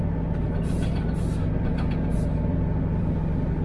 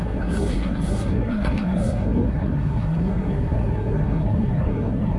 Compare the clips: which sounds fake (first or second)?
second